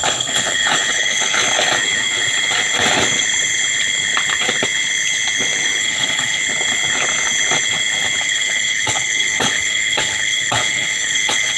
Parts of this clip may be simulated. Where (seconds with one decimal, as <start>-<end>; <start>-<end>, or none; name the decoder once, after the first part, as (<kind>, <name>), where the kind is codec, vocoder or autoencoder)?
0.0-1.4 (codec, HILCodec); 5.8-6.4; 8.2-11.6